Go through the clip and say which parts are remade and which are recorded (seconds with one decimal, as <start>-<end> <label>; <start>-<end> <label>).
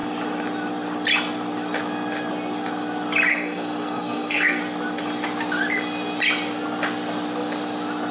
0.0-3.3 recorded; 3.3-4.6 remade; 4.6-8.1 recorded